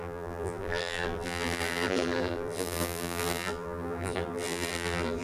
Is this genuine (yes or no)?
no